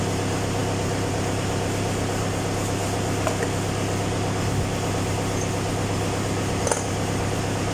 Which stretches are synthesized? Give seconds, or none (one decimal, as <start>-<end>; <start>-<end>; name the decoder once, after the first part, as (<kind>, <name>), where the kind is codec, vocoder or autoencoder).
none